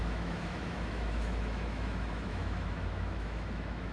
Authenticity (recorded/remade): remade